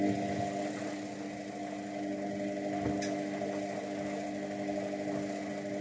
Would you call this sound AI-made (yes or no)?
no